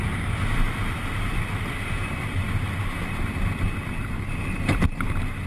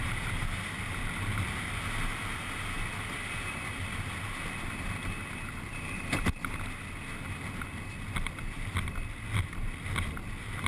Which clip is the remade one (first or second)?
first